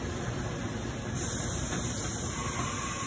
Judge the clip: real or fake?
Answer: fake